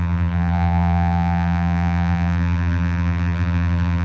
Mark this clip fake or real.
fake